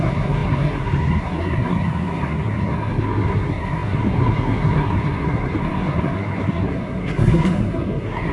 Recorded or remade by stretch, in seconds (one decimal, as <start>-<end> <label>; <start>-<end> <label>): 0.0-8.3 remade